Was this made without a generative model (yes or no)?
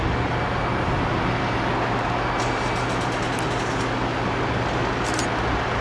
yes